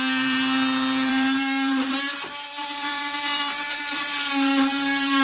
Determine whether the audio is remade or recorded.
remade